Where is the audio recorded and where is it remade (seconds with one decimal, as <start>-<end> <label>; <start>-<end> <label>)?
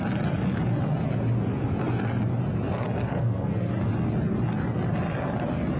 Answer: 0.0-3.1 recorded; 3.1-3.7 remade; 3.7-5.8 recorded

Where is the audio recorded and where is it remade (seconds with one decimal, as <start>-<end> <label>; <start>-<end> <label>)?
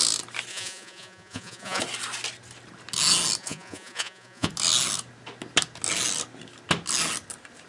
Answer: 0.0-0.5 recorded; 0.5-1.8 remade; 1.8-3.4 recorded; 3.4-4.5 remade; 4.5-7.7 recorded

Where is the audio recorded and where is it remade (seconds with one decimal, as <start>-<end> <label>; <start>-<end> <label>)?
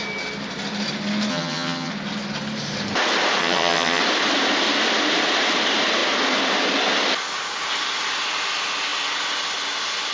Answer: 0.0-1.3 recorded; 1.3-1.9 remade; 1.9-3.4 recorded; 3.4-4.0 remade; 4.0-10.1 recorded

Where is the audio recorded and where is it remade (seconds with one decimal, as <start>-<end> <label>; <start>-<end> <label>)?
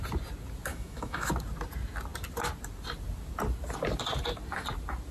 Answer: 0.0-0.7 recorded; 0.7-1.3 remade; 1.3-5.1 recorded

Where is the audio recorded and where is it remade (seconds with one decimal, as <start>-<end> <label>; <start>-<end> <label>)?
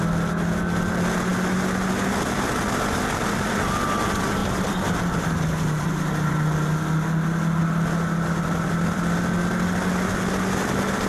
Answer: 0.0-4.4 recorded; 4.4-6.3 remade; 6.3-7.6 recorded; 7.6-9.2 remade; 9.2-11.1 recorded